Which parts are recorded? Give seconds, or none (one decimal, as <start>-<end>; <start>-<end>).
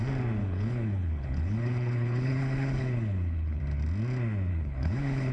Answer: 0.0-0.4; 3.6-4.5